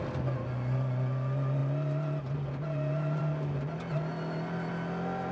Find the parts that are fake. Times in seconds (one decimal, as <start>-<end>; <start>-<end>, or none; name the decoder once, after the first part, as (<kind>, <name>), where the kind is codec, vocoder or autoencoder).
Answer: none